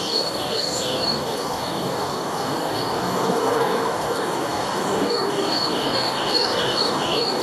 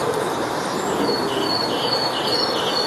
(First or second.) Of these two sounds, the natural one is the second